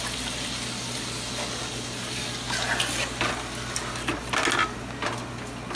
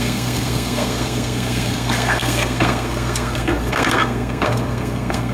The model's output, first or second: second